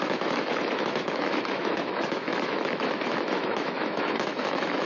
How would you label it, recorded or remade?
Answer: remade